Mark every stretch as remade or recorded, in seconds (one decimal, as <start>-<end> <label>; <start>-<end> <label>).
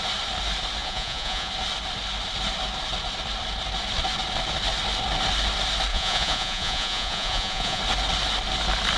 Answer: 0.0-0.8 recorded; 0.8-1.5 remade; 1.5-5.9 recorded; 5.9-7.8 remade; 7.8-9.0 recorded